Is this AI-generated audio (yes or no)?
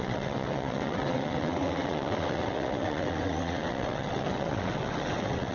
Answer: yes